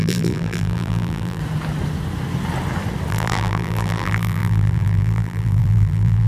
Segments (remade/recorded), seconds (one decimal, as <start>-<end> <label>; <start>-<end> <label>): 0.0-1.4 remade; 1.4-3.1 recorded; 3.1-6.3 remade